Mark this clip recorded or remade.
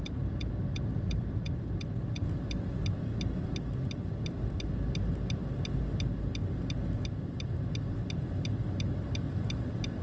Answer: recorded